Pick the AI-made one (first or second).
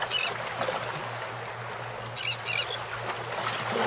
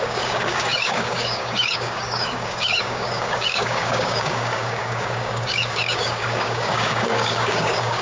second